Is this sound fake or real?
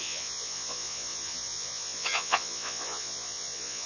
fake